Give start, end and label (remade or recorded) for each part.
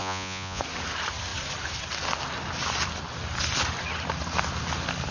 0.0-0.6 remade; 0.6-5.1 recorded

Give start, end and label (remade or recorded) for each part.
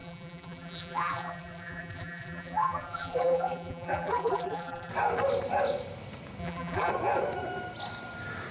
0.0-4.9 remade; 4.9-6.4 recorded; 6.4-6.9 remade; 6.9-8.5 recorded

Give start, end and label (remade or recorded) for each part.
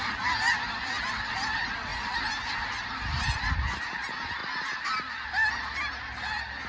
0.0-6.7 recorded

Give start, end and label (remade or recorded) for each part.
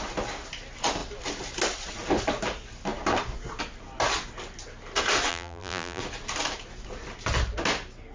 0.0-5.3 recorded; 5.3-6.0 remade; 6.0-8.1 recorded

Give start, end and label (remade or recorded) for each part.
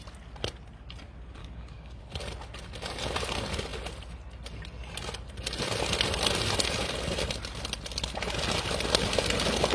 0.0-1.4 recorded; 1.4-2.0 remade; 2.0-9.7 recorded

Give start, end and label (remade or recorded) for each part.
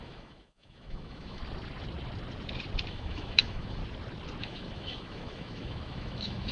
0.0-1.4 remade; 1.4-2.9 recorded; 2.9-3.8 remade; 3.8-4.4 recorded; 4.4-6.5 remade